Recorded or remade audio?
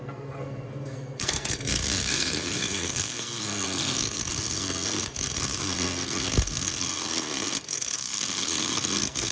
remade